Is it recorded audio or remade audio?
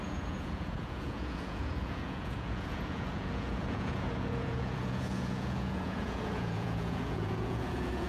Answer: remade